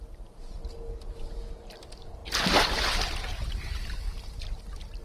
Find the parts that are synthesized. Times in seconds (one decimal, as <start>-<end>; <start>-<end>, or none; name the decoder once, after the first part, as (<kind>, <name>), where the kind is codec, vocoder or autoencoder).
none